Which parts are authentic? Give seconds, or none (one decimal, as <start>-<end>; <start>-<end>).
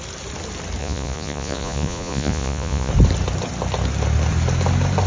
0.0-0.8; 2.9-5.1